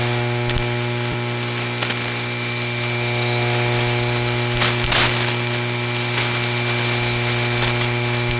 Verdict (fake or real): real